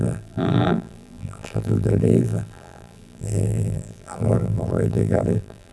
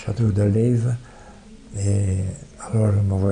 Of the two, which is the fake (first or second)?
first